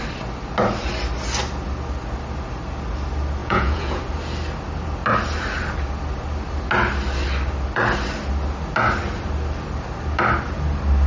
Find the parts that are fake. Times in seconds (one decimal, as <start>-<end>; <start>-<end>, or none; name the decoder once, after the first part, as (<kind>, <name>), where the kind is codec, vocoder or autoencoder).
3.4-4.0 (vocoder, Vocos)